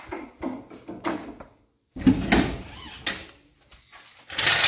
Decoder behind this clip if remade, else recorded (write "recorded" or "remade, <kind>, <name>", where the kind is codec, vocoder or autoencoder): recorded